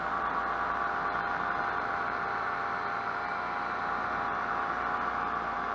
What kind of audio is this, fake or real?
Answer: fake